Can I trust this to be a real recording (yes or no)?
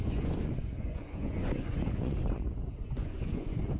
no